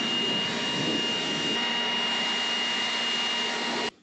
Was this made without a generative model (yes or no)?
yes